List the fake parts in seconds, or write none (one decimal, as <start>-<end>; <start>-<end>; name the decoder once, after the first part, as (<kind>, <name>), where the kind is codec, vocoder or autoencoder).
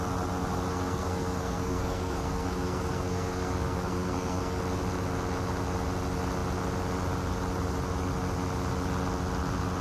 0.7-4.6 (codec, SNAC)